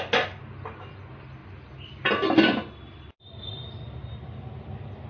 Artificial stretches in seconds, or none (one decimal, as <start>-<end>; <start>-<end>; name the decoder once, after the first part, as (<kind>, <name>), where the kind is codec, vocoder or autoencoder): none